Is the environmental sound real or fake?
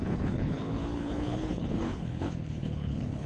fake